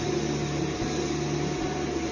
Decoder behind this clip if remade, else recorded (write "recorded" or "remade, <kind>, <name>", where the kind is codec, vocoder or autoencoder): recorded